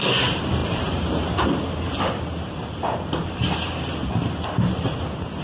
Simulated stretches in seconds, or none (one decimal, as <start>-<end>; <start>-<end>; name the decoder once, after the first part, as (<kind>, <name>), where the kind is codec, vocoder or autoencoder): 0.6-3.7 (vocoder, BigVGAN v2); 4.2-5.0